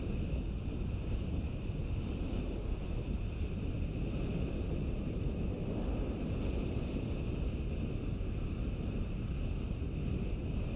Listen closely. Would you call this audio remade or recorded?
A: recorded